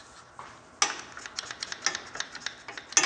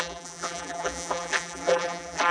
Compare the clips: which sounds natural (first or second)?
first